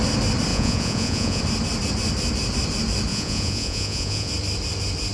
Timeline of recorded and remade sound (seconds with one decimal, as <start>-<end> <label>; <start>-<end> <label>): 0.0-0.5 recorded; 0.5-1.4 remade; 1.4-3.1 recorded; 3.1-4.3 remade; 4.3-5.1 recorded